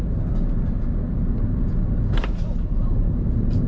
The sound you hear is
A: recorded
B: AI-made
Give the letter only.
A